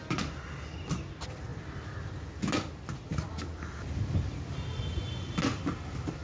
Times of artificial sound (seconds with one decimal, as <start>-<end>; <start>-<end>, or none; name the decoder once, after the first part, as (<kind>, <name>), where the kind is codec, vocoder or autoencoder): none